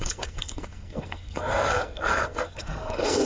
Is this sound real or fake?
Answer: fake